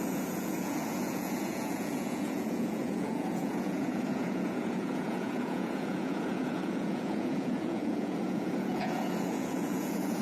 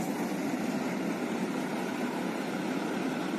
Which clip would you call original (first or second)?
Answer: second